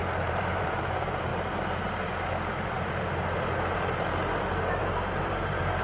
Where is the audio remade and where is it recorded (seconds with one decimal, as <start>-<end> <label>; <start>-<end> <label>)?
0.0-1.3 remade; 1.3-4.8 recorded; 4.8-5.8 remade